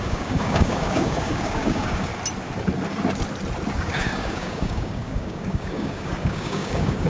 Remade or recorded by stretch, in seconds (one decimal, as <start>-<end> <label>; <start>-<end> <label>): 0.0-2.1 remade; 2.1-3.7 recorded; 3.7-7.1 remade